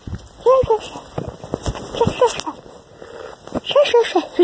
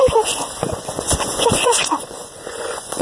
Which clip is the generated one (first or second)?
second